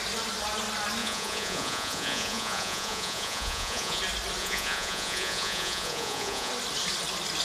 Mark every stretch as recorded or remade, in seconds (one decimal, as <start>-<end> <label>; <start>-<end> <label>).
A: 0.0-1.0 recorded; 1.0-4.0 remade; 4.0-4.4 recorded; 4.4-6.5 remade; 6.5-7.4 recorded